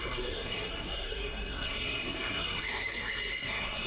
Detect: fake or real fake